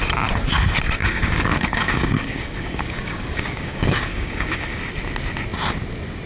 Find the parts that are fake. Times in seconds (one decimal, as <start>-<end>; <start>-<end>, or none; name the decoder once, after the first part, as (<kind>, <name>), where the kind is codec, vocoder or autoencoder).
1.0-4.8 (codec, DAC)